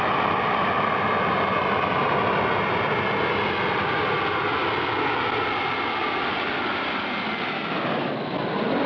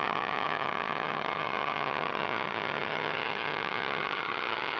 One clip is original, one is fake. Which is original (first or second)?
first